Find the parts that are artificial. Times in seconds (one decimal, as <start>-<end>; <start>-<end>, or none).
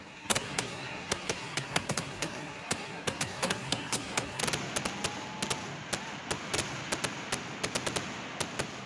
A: 0.0-4.4